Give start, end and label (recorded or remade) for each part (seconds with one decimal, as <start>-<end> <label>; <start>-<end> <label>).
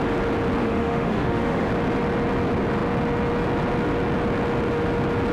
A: 0.0-0.6 recorded; 0.6-1.7 remade; 1.7-5.3 recorded